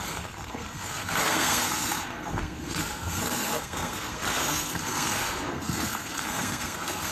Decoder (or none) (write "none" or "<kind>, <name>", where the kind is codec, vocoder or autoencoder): codec, SNAC